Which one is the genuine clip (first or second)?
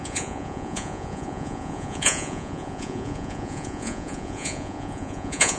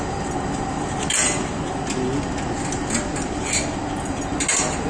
second